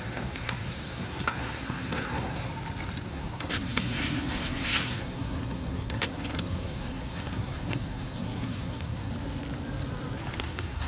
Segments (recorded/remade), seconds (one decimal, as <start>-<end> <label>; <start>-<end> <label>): 0.0-2.5 remade; 2.5-3.1 recorded; 3.1-9.1 remade; 9.1-10.4 recorded; 10.4-10.9 remade